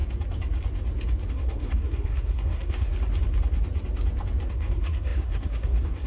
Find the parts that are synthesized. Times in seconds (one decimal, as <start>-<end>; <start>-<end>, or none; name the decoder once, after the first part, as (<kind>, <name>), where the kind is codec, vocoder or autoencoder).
1.3-2.9 (codec, SNAC); 4.5-6.1